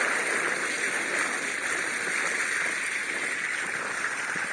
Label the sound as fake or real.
real